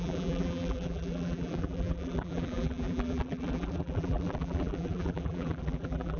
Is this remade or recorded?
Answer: remade